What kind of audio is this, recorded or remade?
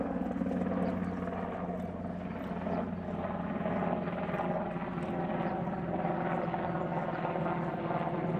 recorded